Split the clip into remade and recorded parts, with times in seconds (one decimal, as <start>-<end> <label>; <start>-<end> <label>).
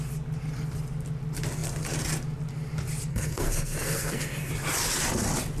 0.0-3.1 recorded; 3.1-4.5 remade; 4.5-5.6 recorded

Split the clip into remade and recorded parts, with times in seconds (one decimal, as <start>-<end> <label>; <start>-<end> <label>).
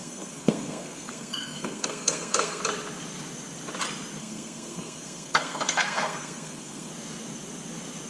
0.0-2.6 remade; 2.6-4.2 recorded; 4.2-6.9 remade; 6.9-8.1 recorded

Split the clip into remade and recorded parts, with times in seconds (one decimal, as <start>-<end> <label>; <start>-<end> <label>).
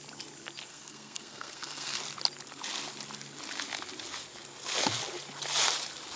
0.0-0.7 recorded; 0.7-2.0 remade; 2.0-6.2 recorded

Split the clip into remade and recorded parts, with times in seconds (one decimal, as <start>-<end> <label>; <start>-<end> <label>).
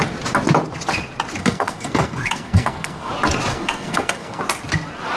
0.0-1.4 recorded; 1.4-3.1 remade; 3.1-3.5 recorded; 3.5-4.4 remade; 4.4-5.2 recorded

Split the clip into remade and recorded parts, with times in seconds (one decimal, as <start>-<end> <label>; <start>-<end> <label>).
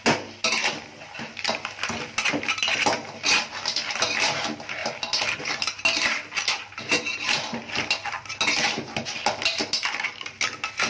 0.0-10.9 recorded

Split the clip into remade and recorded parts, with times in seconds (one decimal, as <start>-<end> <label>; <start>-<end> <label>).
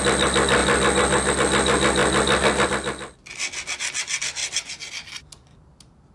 0.0-6.1 recorded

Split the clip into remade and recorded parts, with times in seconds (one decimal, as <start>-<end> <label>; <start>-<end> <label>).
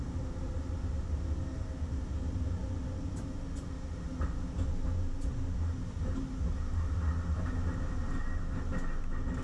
0.0-9.4 recorded